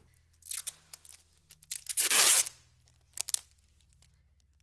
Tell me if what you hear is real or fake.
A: real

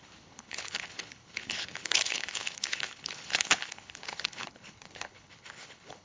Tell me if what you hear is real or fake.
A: fake